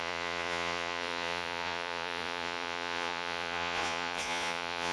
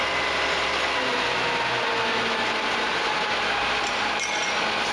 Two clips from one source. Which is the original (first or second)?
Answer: second